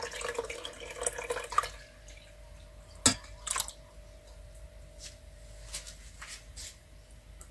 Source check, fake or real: real